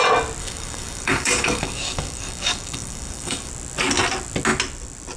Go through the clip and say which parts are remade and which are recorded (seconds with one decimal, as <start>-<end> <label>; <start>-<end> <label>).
0.0-0.4 recorded; 0.4-3.5 remade; 3.5-5.2 recorded